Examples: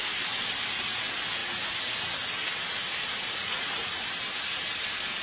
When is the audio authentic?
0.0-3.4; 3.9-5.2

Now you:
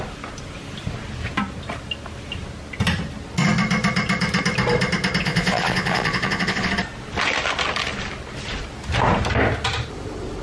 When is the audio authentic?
0.0-5.2; 6.7-10.4

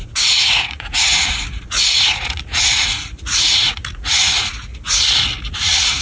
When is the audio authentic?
4.7-5.5

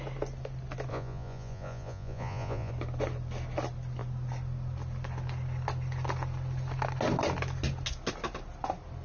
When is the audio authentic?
0.0-0.9; 2.7-9.0

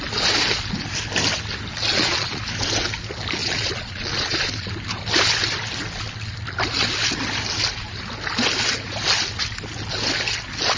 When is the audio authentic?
0.0-1.9; 2.4-3.4; 4.4-10.8

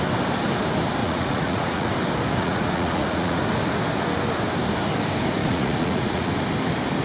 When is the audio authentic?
0.0-1.0; 1.9-2.4; 3.4-5.4; 6.3-7.0